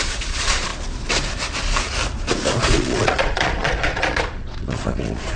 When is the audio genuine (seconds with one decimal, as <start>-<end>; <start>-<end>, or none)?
0.7-2.6